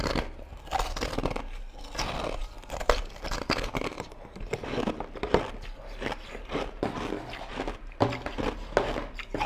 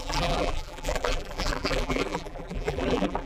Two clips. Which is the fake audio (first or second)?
second